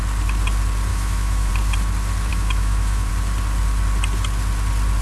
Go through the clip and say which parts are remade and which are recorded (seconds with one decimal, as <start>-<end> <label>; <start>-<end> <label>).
0.0-0.9 recorded; 0.9-1.5 remade; 1.5-2.3 recorded; 2.3-3.1 remade; 3.1-5.0 recorded